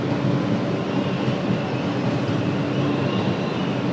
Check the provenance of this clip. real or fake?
real